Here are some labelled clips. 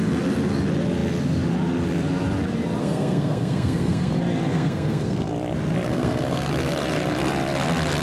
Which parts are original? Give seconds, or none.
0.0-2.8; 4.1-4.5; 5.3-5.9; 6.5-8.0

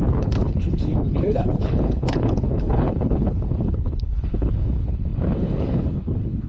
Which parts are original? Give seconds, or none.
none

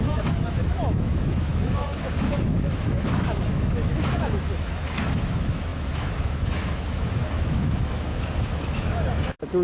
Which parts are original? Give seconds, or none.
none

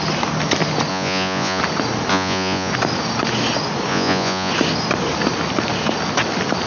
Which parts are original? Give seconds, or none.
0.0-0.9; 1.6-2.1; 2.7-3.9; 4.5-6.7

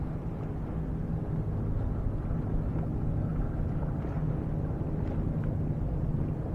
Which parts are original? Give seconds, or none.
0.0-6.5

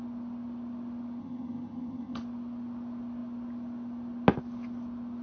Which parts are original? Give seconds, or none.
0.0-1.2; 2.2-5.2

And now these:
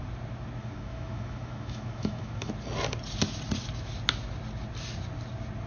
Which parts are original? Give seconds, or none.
0.0-0.6; 2.5-5.7

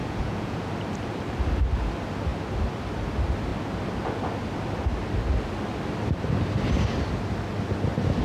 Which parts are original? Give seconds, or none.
0.7-8.2